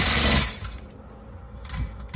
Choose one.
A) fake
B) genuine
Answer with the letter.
B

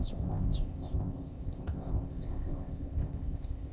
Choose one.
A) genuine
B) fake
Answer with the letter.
B